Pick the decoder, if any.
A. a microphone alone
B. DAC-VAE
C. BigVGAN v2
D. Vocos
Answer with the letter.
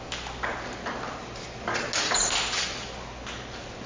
A